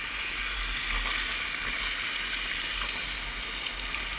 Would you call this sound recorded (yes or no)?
yes